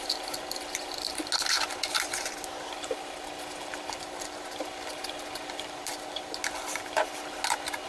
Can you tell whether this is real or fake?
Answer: real